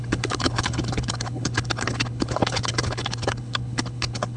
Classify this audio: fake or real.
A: fake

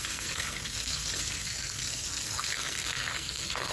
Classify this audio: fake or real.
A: fake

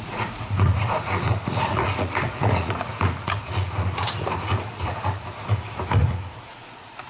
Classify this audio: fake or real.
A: fake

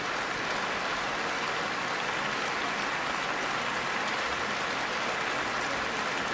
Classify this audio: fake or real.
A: real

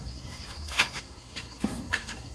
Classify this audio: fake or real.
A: fake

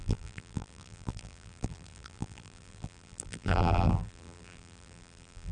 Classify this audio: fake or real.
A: fake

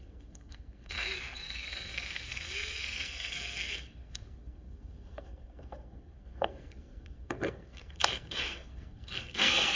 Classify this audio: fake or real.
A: fake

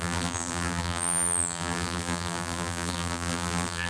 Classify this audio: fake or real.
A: fake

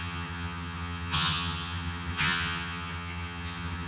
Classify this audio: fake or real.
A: fake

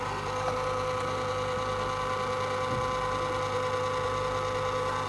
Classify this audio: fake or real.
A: real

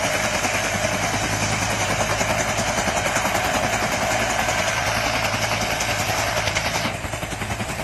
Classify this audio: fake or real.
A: fake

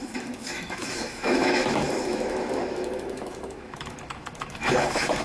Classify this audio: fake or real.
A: fake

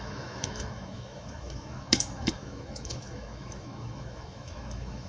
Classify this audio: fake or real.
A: fake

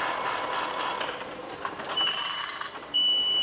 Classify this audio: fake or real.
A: fake